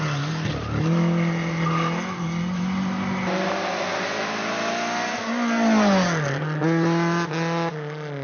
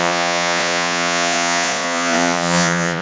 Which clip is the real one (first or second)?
first